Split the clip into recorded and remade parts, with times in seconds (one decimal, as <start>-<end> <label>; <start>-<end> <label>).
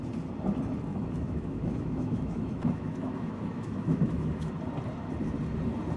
0.0-0.9 recorded; 0.9-4.5 remade; 4.5-6.0 recorded